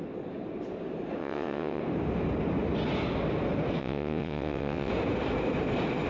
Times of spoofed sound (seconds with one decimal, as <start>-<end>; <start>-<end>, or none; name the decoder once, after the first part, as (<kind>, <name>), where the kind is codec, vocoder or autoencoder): 1.2-1.8 (vocoder, WaveNeXt); 3.8-4.9